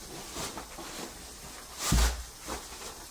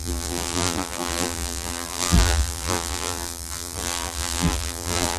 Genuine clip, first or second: first